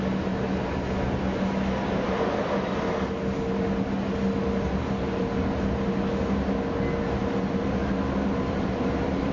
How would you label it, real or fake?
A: real